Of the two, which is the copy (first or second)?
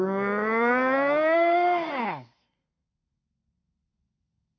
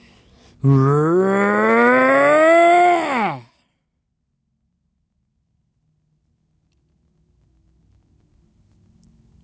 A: first